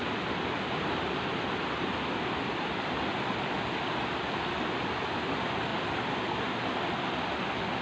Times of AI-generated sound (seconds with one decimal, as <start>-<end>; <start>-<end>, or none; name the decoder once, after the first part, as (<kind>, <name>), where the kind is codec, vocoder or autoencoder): 0.0-2.6 (vocoder, BigVGAN v2)